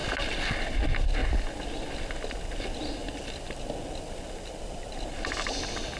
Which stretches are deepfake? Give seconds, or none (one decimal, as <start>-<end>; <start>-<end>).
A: none